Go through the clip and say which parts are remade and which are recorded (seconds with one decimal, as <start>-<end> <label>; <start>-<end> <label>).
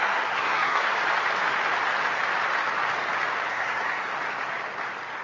0.0-0.9 remade; 0.9-3.5 recorded; 3.5-4.1 remade; 4.1-5.2 recorded